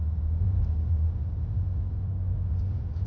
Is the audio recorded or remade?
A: recorded